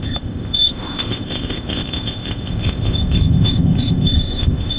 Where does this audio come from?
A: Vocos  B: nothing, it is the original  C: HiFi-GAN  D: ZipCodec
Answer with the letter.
D